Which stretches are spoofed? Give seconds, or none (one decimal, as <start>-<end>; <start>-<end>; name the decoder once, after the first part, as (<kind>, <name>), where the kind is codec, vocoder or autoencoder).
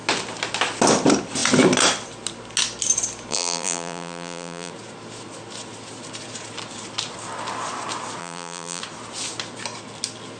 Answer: 3.3-4.7 (vocoder, BigVGAN v2); 8.2-8.8